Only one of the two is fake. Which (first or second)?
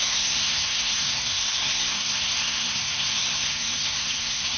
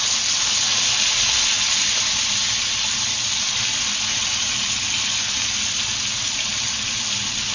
first